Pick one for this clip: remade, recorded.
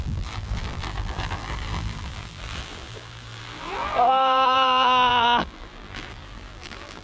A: remade